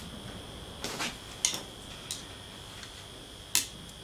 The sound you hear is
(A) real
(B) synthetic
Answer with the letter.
A